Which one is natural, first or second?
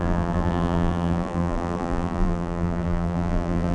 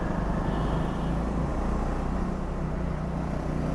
second